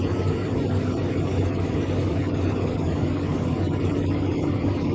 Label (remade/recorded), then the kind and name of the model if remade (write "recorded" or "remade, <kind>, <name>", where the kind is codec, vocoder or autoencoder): remade, codec, DAC